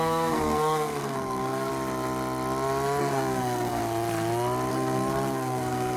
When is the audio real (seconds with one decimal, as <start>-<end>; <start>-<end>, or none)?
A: 1.7-3.0; 3.8-4.7